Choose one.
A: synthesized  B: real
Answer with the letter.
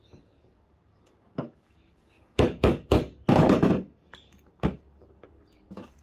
A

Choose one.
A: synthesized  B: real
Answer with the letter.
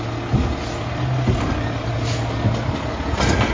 B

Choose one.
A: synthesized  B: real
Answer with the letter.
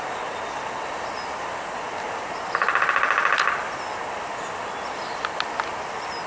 B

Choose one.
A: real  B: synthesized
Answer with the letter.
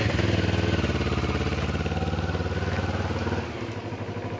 A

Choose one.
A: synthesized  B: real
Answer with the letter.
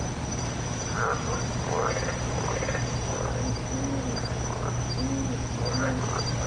B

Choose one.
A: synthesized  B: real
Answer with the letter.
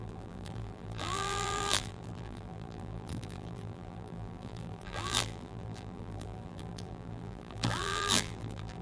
A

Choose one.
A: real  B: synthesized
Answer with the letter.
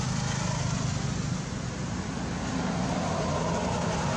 A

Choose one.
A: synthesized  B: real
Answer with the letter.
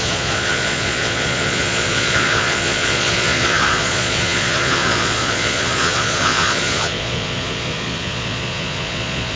A